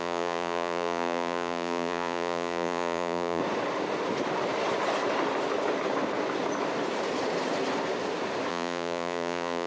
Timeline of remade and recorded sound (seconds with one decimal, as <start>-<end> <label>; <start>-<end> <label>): 0.0-3.4 remade; 3.4-8.5 recorded; 8.5-9.7 remade